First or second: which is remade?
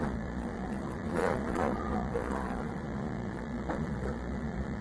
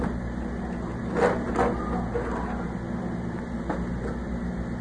first